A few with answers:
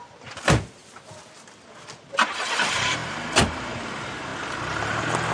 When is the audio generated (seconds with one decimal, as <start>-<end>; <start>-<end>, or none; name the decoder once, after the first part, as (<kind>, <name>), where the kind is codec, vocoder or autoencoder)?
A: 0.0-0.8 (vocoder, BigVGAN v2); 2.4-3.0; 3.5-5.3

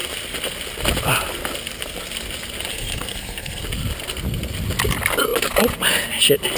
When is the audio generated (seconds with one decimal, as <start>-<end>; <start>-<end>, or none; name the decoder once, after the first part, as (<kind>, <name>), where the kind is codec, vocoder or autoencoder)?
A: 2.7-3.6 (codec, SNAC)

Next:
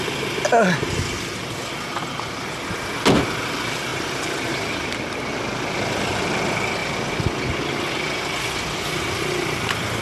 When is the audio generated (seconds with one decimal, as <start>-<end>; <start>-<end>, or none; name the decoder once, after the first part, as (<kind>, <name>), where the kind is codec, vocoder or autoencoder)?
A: 3.9-4.5 (vocoder, BigVGAN v2)

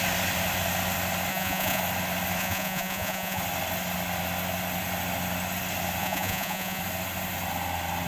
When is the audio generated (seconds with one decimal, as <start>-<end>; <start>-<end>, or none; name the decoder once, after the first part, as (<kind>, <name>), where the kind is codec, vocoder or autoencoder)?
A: 1.3-1.8 (vocoder, Vocos); 2.4-3.4; 6.0-6.8

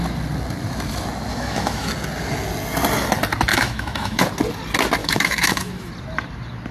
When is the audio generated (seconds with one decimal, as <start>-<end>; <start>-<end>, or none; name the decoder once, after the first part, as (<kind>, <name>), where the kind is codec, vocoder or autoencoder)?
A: 1.3-1.9 (autoencoder, DAC-VAE); 3.5-4.2; 5.0-5.9

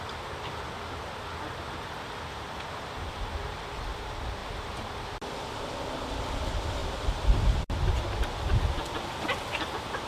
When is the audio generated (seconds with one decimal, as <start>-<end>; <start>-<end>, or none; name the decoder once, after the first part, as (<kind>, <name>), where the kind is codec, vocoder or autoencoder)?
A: none

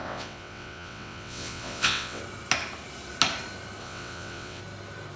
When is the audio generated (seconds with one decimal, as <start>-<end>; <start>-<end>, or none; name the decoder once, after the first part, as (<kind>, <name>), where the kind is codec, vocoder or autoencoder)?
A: 0.0-2.2 (vocoder, WaveNeXt); 3.8-4.6